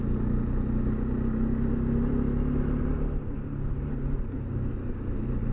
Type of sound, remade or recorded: recorded